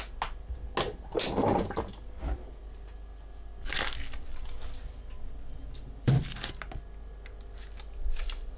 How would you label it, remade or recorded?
recorded